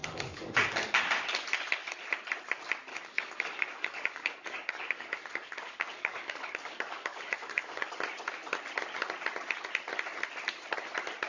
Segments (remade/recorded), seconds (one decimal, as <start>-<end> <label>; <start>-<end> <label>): 0.0-1.0 remade; 1.0-2.9 recorded; 2.9-7.9 remade; 7.9-11.3 recorded